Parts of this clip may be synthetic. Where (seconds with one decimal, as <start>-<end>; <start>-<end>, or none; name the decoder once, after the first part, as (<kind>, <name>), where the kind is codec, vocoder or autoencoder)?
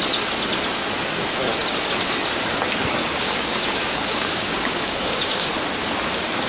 3.0-5.5 (codec, DAC)